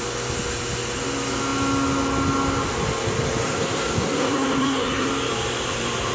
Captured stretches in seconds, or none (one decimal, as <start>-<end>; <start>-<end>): 0.0-3.4; 5.1-6.1